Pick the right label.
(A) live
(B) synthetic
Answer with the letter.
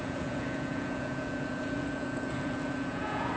B